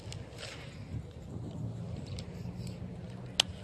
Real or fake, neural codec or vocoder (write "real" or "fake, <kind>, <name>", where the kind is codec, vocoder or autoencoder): real